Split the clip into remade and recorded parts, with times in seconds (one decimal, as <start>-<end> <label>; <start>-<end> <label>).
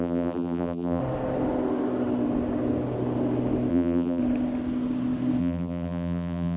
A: 0.0-1.0 remade; 1.0-3.7 recorded; 3.7-4.2 remade; 4.2-5.4 recorded; 5.4-6.6 remade